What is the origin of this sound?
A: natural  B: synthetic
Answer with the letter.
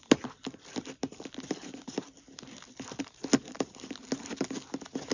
A